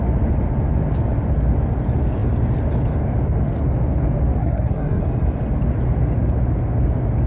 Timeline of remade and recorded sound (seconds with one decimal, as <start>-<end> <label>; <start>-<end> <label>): 0.0-4.4 recorded; 4.4-5.0 remade; 5.0-7.3 recorded